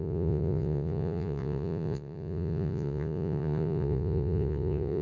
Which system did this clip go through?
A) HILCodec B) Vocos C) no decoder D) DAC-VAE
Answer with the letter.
B